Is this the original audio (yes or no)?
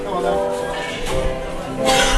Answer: yes